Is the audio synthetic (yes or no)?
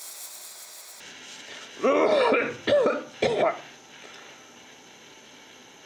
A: no